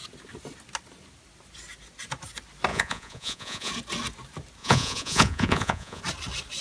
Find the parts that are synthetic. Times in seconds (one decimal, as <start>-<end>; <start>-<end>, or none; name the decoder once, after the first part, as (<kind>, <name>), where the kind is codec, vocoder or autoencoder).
2.7-3.7 (vocoder, Vocos); 4.6-6.0